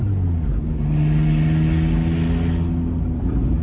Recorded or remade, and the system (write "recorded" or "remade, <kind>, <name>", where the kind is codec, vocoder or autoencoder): recorded